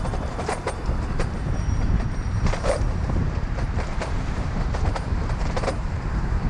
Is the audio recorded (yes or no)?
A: no